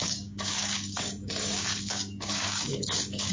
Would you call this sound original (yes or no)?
no